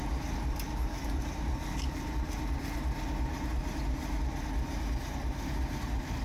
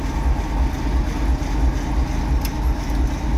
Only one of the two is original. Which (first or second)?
second